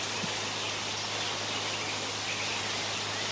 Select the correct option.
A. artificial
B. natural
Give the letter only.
B